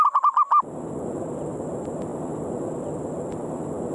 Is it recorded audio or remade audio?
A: recorded